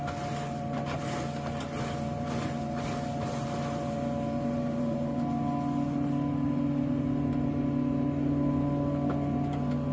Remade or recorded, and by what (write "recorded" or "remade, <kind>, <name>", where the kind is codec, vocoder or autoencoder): recorded